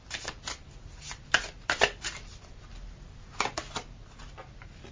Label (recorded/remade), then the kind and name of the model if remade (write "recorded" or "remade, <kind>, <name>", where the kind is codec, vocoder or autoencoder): recorded